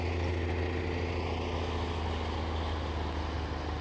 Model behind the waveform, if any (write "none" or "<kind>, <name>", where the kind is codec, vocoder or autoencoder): none